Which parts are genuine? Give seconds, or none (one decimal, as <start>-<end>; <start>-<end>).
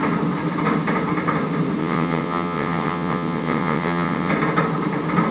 0.0-1.8; 4.3-5.3